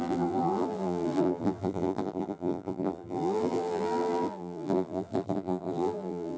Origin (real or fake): fake